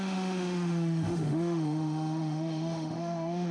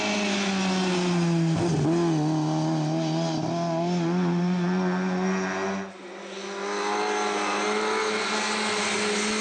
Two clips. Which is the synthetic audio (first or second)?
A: first